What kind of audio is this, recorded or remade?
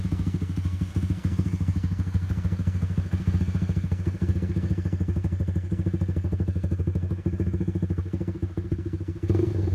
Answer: remade